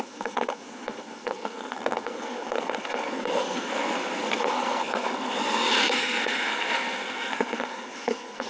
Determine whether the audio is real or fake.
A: fake